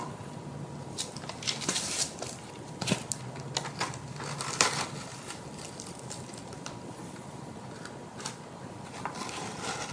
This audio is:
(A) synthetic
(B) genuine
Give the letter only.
B